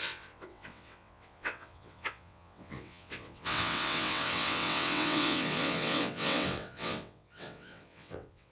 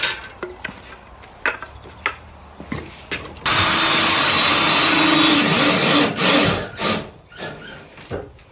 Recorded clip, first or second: second